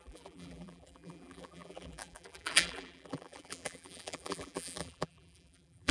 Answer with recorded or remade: remade